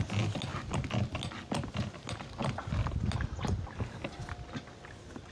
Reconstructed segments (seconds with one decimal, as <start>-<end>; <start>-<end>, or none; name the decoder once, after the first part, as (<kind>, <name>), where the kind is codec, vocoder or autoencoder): none